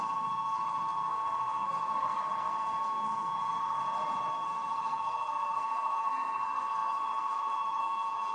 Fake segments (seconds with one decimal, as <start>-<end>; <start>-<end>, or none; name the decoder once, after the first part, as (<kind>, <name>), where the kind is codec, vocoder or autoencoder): 0.0-3.8 (codec, SNAC); 4.3-8.3